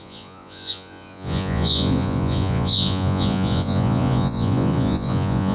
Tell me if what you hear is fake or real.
fake